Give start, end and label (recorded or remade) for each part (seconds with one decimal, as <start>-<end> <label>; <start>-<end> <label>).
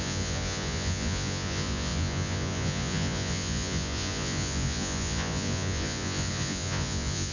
0.0-7.3 remade